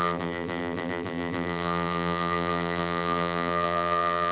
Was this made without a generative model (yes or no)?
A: no